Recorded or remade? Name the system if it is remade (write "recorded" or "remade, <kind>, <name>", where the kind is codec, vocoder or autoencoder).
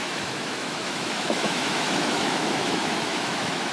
remade, autoencoder, DAC-VAE